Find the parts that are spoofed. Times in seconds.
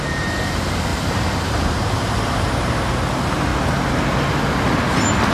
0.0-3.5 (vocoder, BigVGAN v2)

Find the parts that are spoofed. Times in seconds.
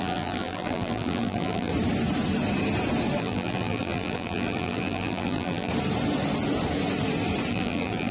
0.0-1.7 (vocoder, BigVGAN v2); 3.2-5.7; 7.5-8.1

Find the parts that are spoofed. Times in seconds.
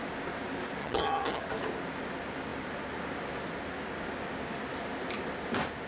0.8-1.4 (vocoder, HiFi-GAN)